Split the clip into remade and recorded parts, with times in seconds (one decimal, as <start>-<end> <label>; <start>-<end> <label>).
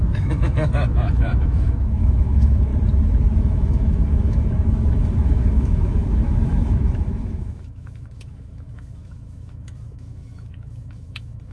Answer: 0.0-2.7 remade; 2.7-3.4 recorded; 3.4-11.5 remade